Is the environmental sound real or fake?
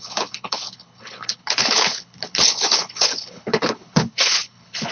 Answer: fake